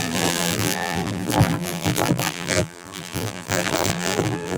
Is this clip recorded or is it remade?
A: remade